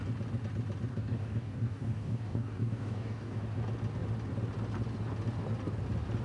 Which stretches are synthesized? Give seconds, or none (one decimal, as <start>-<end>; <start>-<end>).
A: 0.9-3.4